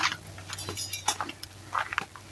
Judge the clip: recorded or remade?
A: recorded